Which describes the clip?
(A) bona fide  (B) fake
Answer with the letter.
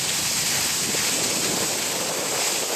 A